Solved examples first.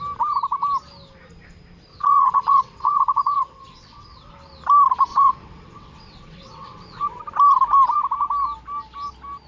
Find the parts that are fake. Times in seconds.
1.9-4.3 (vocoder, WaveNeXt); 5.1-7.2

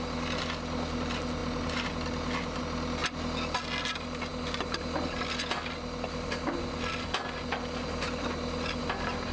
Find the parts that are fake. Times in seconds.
none

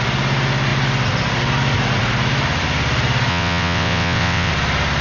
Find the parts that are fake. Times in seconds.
3.3-4.5 (vocoder, WaveNeXt)

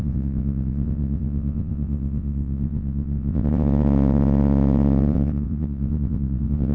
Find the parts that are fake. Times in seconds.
0.0-6.7 (vocoder, WaveNeXt)

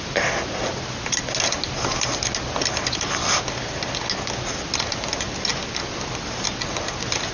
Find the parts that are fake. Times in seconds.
none

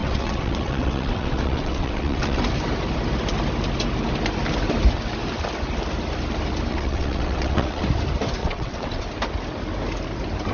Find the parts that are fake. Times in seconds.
0.0-2.4 (vocoder, WaveNeXt); 6.7-7.8; 8.4-9.0

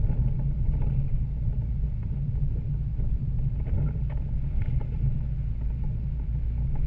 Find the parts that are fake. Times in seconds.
none